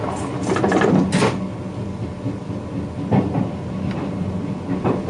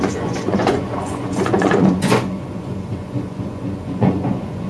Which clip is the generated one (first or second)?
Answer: second